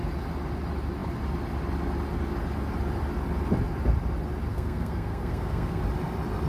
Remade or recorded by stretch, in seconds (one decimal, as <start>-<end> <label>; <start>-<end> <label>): 0.0-4.5 recorded; 4.5-5.8 remade; 5.8-6.5 recorded